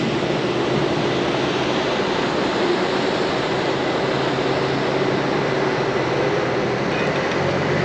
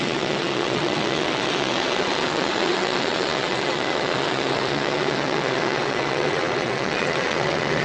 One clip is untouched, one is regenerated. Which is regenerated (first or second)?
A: second